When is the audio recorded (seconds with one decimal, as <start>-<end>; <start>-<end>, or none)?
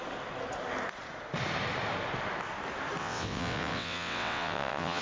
0.0-3.0